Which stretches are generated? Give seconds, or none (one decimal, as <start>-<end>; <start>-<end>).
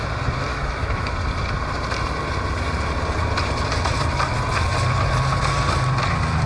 0.5-1.1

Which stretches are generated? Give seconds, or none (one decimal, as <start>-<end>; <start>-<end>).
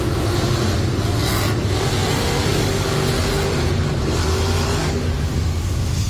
2.5-3.1; 4.8-6.1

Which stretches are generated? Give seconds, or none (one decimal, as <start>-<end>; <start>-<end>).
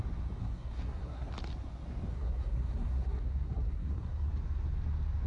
0.4-1.3; 2.1-4.3